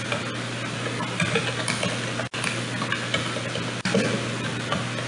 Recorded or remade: recorded